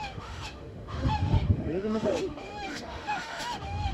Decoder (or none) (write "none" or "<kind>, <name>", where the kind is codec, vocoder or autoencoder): autoencoder, DAC-VAE